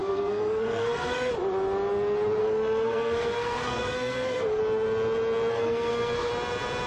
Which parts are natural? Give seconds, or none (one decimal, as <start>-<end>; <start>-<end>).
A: 1.3-2.4; 4.6-5.5; 6.3-6.9